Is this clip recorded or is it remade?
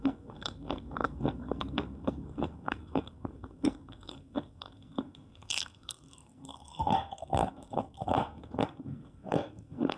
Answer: remade